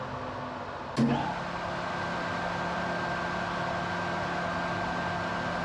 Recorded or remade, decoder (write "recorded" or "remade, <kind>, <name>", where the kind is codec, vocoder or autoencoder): recorded